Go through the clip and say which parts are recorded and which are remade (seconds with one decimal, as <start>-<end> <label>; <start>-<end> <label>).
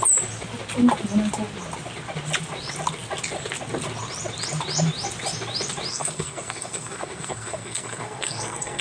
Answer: 0.0-5.9 recorded; 5.9-8.8 remade